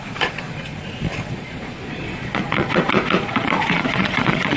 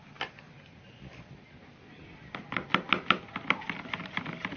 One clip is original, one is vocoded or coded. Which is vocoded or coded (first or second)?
first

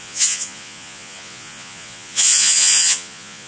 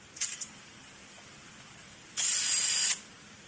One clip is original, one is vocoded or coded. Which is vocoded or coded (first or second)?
first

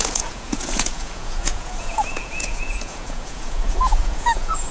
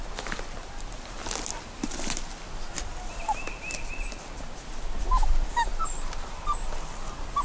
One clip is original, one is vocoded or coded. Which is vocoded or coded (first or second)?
first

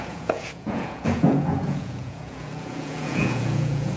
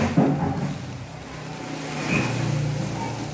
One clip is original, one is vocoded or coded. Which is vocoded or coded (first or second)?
first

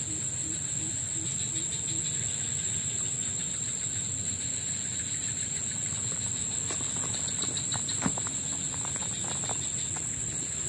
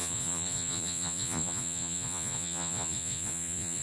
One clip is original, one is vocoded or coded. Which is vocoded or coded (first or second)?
second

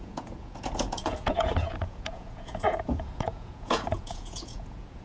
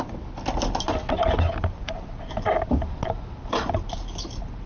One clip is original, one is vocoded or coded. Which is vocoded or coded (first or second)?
first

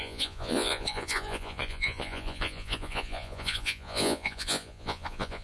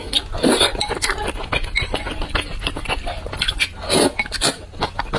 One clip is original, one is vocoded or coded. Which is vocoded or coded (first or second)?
first